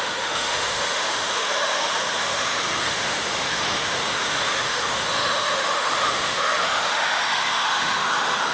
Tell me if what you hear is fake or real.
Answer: fake